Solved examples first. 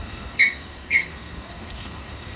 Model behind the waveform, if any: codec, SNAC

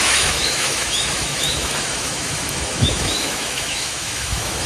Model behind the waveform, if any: autoencoder, DAC-VAE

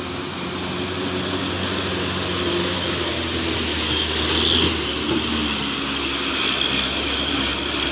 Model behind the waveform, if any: none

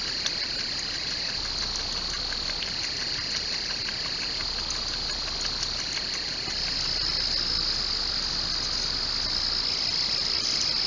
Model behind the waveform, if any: none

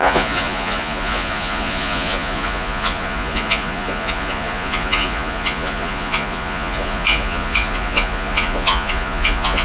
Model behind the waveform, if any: vocoder, Vocos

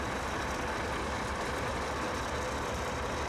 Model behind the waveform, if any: none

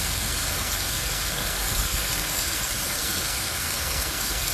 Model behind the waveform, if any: codec, SNAC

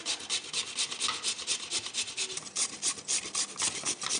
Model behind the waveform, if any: none